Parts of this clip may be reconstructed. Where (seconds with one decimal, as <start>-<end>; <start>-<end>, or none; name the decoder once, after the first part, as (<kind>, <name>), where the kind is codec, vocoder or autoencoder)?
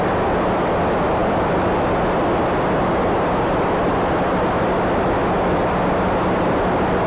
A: none